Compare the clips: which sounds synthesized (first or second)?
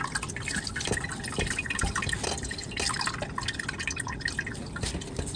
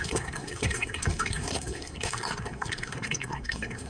second